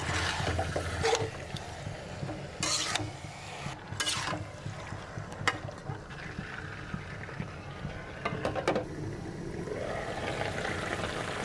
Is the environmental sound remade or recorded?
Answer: recorded